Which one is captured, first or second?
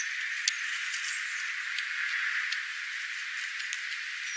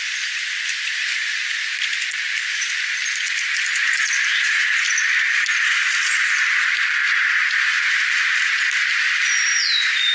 first